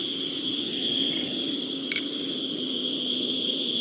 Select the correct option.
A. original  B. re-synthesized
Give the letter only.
A